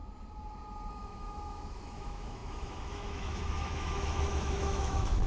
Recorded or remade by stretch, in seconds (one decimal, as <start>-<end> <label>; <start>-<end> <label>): 0.0-0.9 recorded; 0.9-5.3 remade